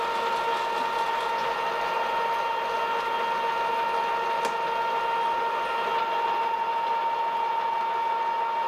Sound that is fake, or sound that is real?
real